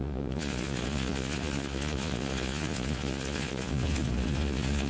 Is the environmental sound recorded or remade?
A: remade